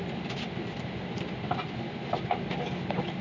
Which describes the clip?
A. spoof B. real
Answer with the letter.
B